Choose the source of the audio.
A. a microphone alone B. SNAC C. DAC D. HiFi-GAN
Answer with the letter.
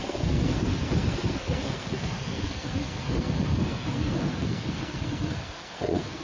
B